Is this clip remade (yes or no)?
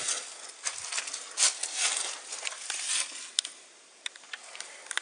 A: no